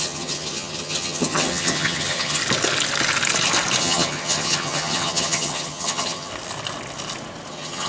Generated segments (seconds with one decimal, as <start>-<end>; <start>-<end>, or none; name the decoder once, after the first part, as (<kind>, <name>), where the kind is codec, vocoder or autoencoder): 0.0-2.4 (vocoder, HiFi-GAN); 3.8-6.3; 7.5-7.9